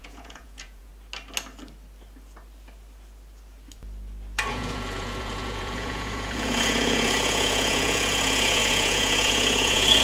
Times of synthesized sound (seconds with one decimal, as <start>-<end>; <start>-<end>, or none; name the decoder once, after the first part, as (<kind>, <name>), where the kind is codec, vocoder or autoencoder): 0.0-0.9 (vocoder, Vocos); 4.5-10.0